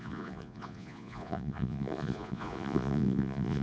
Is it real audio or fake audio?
fake